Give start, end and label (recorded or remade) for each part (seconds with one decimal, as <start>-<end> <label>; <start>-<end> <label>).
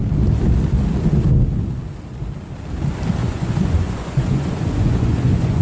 0.0-3.2 recorded; 3.2-5.6 remade